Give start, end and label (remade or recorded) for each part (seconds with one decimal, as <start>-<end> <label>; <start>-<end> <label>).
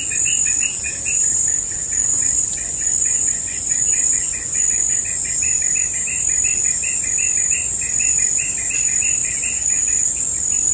0.0-2.0 recorded; 2.0-4.9 remade; 4.9-9.2 recorded; 9.2-10.2 remade; 10.2-10.7 recorded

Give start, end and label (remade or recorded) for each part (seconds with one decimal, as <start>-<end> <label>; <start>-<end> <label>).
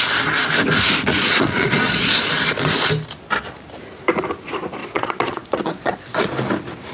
0.0-1.1 recorded; 1.1-2.3 remade; 2.3-4.8 recorded; 4.8-6.3 remade; 6.3-6.9 recorded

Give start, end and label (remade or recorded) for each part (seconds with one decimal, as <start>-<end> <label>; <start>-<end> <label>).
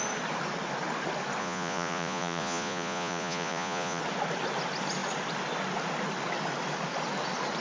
0.0-1.4 recorded; 1.4-4.0 remade; 4.0-7.6 recorded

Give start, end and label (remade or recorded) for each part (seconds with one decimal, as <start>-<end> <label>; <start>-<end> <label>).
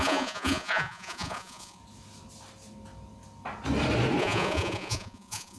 0.0-1.8 remade; 1.8-4.2 recorded; 4.2-5.6 remade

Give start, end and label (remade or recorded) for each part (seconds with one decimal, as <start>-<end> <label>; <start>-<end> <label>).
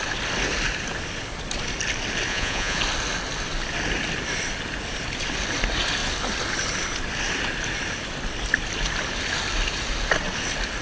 0.0-2.3 recorded; 2.3-2.8 remade; 2.8-10.8 recorded